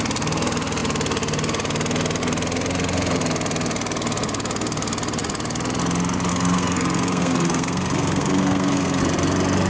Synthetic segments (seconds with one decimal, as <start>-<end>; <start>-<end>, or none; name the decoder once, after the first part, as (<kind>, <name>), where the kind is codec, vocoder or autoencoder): 6.3-9.0 (codec, SNAC)